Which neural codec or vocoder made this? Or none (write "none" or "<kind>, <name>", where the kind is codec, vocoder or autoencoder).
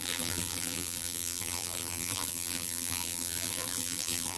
vocoder, BigVGAN v2